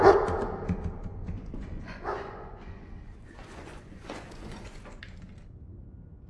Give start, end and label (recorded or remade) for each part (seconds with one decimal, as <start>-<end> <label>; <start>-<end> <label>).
0.0-1.2 recorded; 1.2-5.0 remade; 5.0-6.3 recorded